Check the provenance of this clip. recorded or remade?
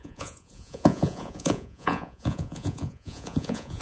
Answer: remade